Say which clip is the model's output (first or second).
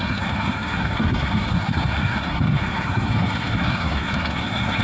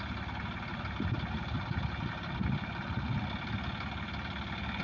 first